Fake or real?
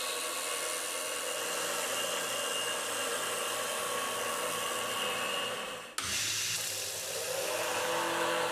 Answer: real